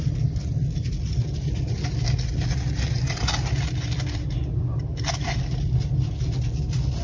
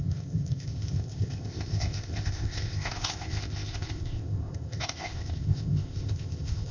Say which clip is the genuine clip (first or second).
first